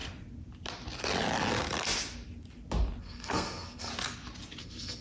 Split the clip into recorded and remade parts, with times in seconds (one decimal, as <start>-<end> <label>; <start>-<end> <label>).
0.0-3.0 recorded; 3.0-3.9 remade; 3.9-4.6 recorded; 4.6-5.0 remade